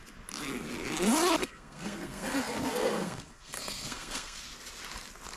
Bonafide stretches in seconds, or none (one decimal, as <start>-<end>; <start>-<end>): 0.0-1.4; 4.4-5.4